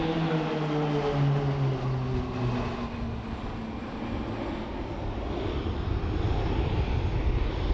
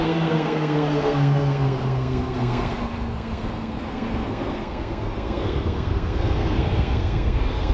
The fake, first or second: second